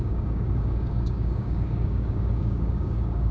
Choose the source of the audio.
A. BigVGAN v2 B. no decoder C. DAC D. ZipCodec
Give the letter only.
C